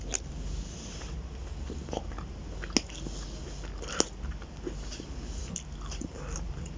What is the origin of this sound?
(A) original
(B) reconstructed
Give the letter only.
A